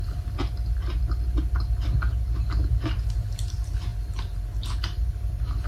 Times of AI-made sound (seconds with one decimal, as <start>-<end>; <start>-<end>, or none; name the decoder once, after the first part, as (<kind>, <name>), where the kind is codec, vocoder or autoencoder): none